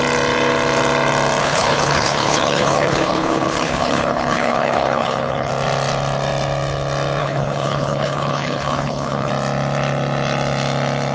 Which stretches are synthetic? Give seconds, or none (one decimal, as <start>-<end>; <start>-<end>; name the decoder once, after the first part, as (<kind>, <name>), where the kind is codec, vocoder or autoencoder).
1.4-5.5 (codec, HILCodec); 7.2-9.3